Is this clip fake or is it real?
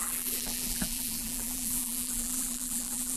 fake